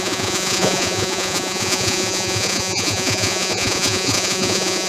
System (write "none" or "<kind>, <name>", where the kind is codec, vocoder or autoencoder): vocoder, Vocos